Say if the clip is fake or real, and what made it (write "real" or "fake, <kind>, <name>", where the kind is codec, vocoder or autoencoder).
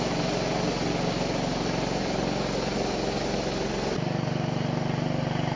real